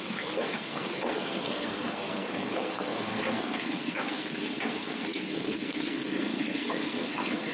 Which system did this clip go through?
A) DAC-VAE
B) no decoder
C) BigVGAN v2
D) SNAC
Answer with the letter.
D